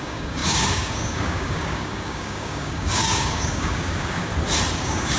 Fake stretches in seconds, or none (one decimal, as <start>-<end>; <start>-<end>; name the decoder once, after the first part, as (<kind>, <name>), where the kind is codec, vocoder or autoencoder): 0.0-4.3 (codec, DAC); 4.8-5.2